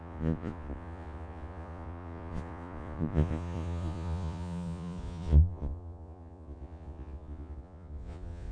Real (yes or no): no